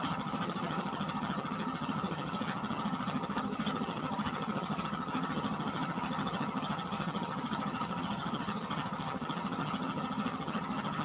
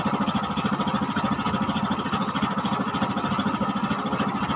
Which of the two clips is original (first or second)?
second